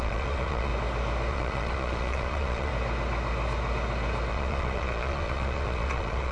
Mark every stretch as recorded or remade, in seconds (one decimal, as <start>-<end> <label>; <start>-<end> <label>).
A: 0.0-0.7 remade; 0.7-1.3 recorded; 1.3-2.7 remade; 2.7-4.3 recorded; 4.3-6.3 remade